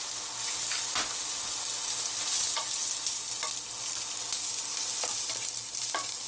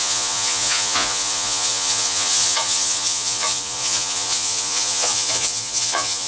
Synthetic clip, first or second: second